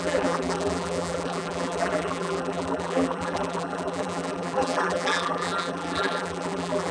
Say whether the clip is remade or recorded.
remade